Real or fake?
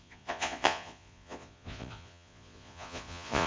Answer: fake